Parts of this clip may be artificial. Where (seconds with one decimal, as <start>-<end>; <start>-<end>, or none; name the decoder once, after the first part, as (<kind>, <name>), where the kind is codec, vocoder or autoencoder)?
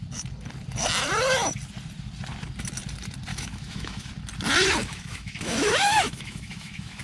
3.3-4.1 (autoencoder, DAC-VAE); 4.8-7.0